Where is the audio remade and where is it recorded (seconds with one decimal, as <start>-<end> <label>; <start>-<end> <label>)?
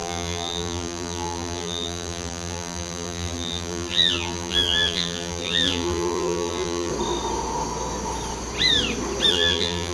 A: 0.0-6.9 remade; 6.9-9.3 recorded; 9.3-9.9 remade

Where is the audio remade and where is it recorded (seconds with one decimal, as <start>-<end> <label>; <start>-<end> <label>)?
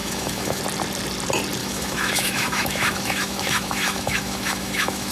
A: 0.0-0.6 remade; 0.6-1.6 recorded; 1.6-5.1 remade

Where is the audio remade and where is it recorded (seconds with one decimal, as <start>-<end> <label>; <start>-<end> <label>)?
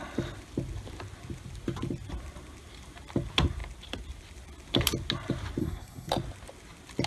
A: 0.0-5.6 recorded; 5.6-6.1 remade; 6.1-7.1 recorded